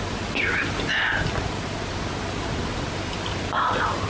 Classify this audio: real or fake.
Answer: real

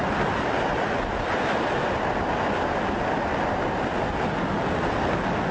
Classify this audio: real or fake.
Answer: real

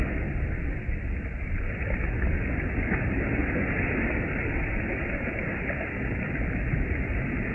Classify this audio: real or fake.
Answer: real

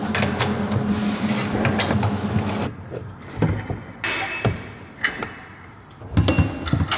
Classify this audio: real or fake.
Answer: real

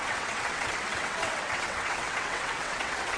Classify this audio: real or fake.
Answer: fake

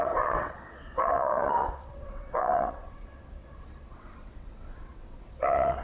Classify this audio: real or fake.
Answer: fake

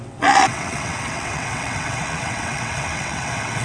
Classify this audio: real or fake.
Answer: fake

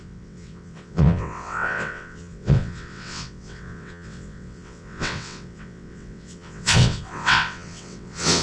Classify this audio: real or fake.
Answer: fake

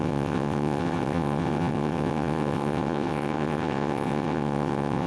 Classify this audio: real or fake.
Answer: fake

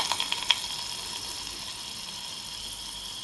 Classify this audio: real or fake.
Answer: real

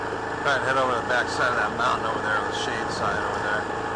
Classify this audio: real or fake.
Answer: real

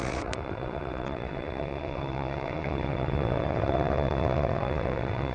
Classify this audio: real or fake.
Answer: fake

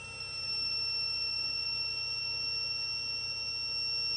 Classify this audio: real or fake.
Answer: real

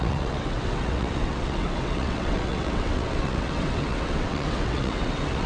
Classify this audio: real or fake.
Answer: fake